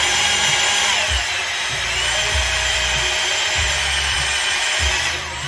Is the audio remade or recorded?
remade